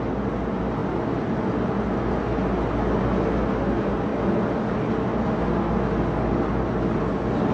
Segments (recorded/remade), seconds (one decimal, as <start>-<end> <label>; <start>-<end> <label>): 0.0-7.5 recorded